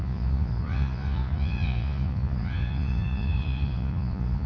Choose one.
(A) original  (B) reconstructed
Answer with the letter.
B